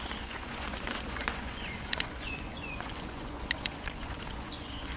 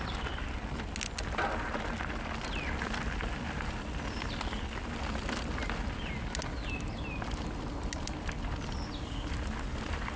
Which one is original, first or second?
second